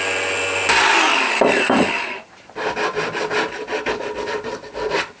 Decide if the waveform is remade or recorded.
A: recorded